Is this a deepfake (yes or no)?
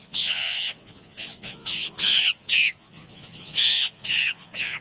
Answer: yes